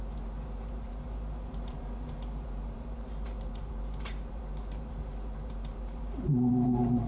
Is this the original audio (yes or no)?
no